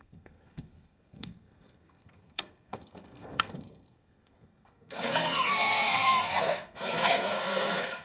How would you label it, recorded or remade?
remade